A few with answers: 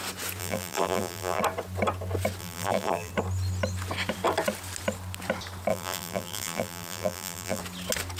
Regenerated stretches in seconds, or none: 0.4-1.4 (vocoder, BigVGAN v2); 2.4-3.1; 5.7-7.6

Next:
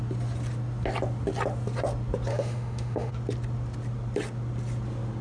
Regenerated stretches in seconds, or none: 2.3-3.1 (autoencoder, DAC-VAE)

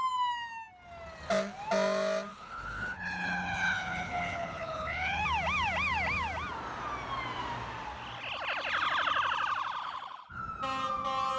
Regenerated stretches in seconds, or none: 2.3-5.2 (codec, HILCodec); 9.8-10.4

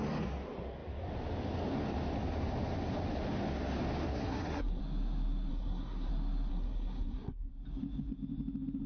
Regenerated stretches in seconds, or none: 4.1-4.8 (codec, SNAC); 5.5-6.1; 6.5-7.5

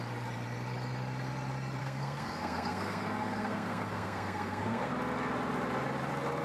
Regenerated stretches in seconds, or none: 1.8-4.9 (codec, SNAC)

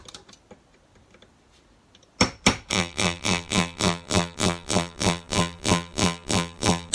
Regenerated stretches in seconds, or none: 2.7-6.9 (vocoder, BigVGAN v2)

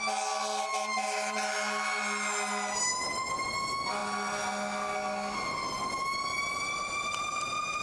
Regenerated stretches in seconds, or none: 2.9-3.5 (vocoder, BigVGAN v2)